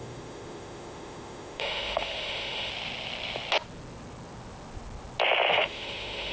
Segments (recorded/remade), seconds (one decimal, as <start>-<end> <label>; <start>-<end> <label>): 0.0-2.7 remade; 2.7-5.5 recorded; 5.5-6.3 remade